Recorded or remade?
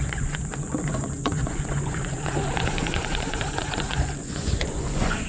remade